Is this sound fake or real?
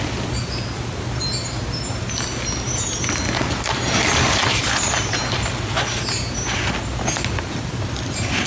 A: real